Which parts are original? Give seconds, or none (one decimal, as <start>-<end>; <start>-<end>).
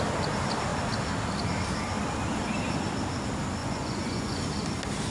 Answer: 0.0-3.6; 4.4-5.1